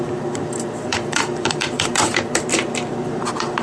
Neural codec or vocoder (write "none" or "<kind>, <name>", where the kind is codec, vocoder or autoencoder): vocoder, BigVGAN v2